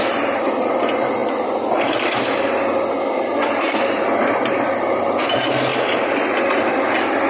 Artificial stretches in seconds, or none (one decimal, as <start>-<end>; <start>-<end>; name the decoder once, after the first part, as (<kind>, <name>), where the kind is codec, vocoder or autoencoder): 5.7-6.7 (vocoder, BigVGAN v2)